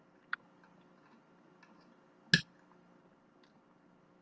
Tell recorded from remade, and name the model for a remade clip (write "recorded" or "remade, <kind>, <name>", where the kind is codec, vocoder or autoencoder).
recorded